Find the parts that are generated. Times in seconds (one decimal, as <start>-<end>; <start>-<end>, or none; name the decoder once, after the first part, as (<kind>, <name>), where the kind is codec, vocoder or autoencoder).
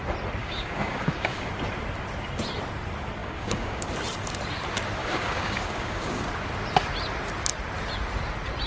0.4-1.5 (codec, DAC); 3.2-3.9; 5.0-6.2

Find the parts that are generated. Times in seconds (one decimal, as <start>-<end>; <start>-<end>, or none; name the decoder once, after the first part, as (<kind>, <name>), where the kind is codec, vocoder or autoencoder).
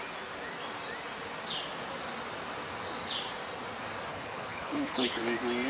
4.1-5.2 (codec, HILCodec)